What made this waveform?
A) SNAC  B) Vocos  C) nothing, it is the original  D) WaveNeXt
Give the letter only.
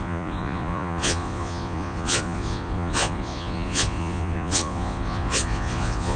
B